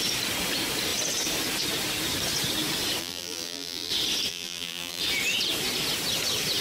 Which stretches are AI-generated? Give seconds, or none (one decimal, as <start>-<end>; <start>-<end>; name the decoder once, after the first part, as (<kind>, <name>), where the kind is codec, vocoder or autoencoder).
3.0-3.9 (vocoder, BigVGAN v2); 4.3-5.0